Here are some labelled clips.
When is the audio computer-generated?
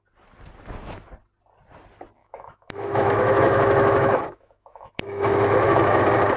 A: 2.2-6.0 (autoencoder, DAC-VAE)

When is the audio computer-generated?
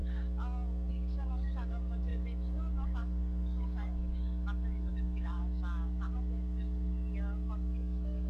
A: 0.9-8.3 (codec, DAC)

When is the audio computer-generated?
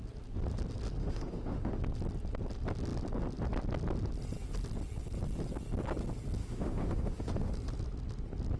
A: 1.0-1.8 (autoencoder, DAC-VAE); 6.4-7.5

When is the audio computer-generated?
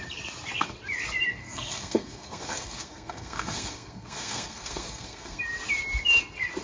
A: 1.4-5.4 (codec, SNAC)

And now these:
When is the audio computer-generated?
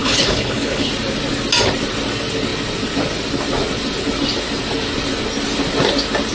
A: 0.0-0.9 (codec, HILCodec)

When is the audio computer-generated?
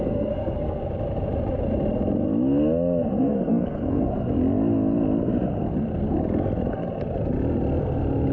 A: 0.0-0.8 (codec, SNAC); 3.2-4.1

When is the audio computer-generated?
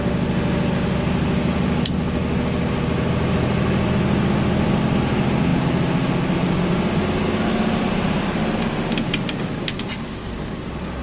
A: none